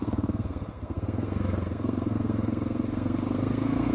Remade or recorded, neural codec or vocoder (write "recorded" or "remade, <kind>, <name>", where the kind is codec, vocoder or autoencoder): remade, codec, SNAC